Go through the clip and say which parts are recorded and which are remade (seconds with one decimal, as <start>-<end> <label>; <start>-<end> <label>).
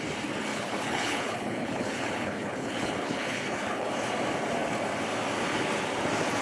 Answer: 0.0-0.5 recorded; 0.5-3.9 remade; 3.9-6.4 recorded